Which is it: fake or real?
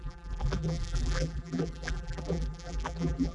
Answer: fake